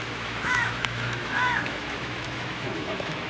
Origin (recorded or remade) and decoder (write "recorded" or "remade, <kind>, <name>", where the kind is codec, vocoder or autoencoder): remade, autoencoder, DAC-VAE